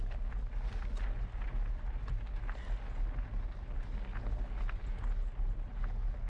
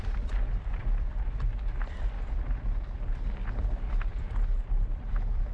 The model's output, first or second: second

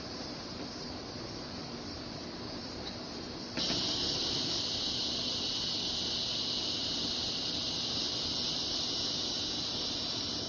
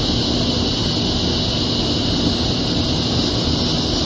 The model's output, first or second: first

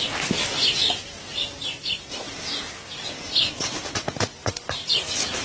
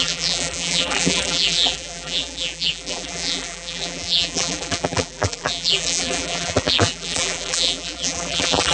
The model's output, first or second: second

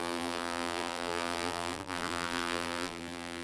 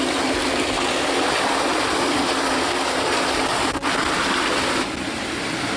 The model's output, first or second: first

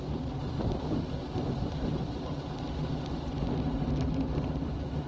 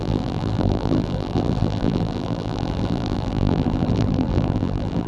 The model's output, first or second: second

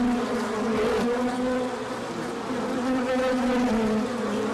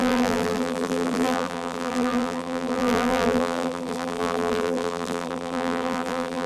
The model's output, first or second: second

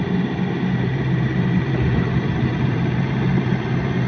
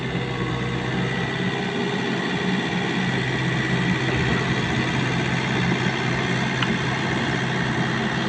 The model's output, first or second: first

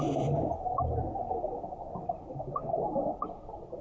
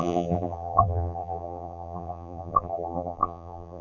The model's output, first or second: second